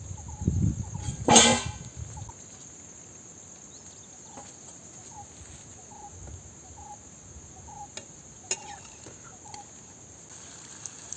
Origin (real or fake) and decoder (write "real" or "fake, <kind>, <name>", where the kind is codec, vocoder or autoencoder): real